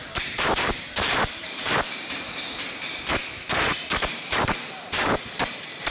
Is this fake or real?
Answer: fake